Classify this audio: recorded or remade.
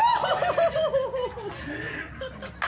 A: recorded